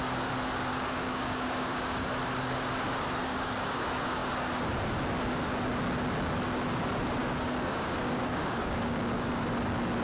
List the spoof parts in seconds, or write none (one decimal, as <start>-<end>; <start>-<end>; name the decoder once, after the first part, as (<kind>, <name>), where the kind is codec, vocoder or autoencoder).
0.7-2.1 (codec, DAC); 3.3-3.8; 7.2-9.4